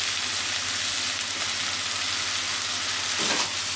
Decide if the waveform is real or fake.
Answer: real